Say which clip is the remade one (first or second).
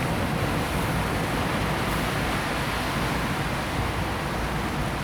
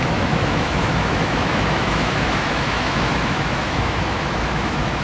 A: second